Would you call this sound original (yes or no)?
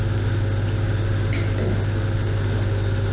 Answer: yes